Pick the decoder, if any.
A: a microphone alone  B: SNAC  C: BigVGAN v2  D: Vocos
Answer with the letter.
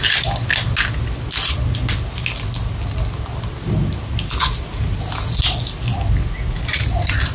A